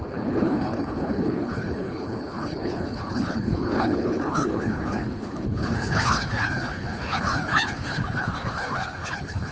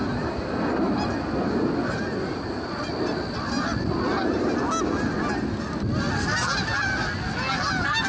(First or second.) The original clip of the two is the second